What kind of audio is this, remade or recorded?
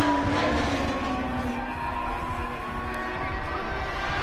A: recorded